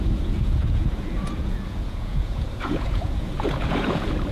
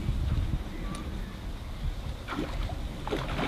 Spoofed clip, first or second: first